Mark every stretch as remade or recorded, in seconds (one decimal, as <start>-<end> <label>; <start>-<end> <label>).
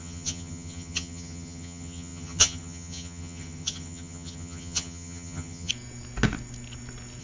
0.0-5.7 remade; 5.7-7.2 recorded